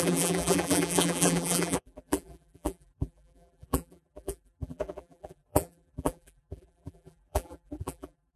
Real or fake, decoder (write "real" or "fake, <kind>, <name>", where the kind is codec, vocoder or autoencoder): fake, vocoder, BigVGAN v2